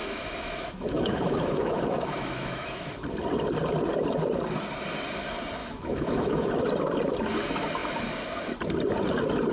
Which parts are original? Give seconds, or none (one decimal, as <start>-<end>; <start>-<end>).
2.9-5.6; 6.5-9.5